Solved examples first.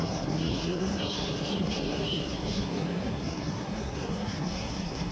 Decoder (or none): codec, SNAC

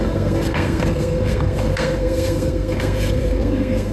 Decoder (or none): codec, SNAC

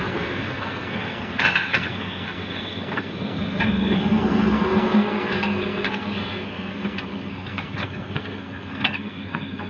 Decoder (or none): codec, SNAC